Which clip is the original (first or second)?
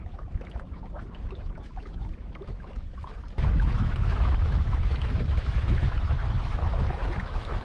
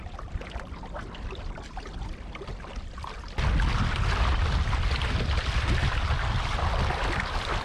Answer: second